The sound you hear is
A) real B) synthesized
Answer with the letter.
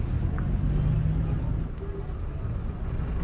A